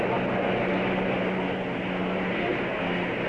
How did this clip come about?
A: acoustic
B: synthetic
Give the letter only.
A